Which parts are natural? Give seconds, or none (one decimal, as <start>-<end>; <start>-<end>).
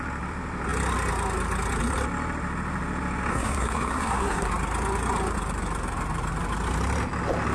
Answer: 0.0-3.3; 4.5-7.5